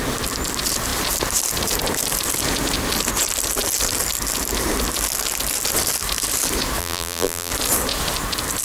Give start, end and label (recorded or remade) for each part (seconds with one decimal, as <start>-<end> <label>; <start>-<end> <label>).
0.0-6.8 recorded; 6.8-7.5 remade; 7.5-8.6 recorded